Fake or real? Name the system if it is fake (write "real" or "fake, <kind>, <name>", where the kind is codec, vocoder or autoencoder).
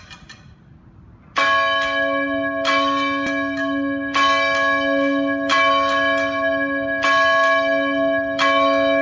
real